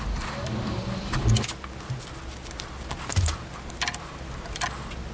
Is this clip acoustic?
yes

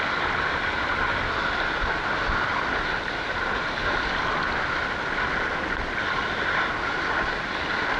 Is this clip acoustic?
yes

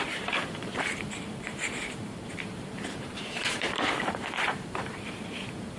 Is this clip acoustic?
no